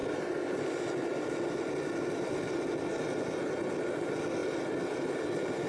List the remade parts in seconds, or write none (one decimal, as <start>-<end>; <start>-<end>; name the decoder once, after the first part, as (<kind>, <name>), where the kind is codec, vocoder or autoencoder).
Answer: none

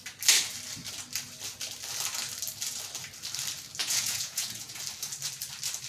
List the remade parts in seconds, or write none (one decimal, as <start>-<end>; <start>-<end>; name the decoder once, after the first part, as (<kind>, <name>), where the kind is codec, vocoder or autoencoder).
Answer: 3.8-4.8 (vocoder, Vocos)

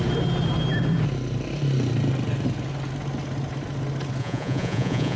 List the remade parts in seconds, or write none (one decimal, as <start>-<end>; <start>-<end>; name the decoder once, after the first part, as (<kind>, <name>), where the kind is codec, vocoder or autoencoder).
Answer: 4.2-5.2 (vocoder, Vocos)

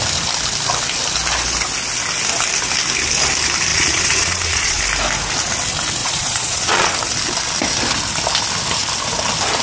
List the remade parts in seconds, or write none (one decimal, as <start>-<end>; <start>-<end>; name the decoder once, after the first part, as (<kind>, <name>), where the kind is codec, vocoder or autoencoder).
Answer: 3.7-4.8 (vocoder, Vocos); 6.0-6.9

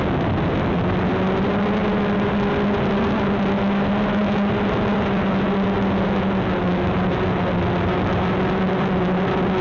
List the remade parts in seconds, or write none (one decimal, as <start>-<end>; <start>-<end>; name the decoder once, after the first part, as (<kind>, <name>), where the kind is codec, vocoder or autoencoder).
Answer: none